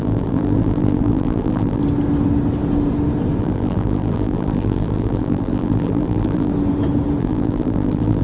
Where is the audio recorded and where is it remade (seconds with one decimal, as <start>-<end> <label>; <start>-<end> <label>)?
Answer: 0.0-1.8 remade; 1.8-3.4 recorded; 3.4-6.5 remade; 6.5-7.2 recorded; 7.2-8.2 remade